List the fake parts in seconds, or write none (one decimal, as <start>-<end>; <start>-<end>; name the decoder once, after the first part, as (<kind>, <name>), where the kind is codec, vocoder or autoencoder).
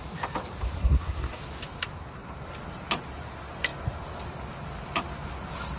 0.8-1.4 (codec, SNAC)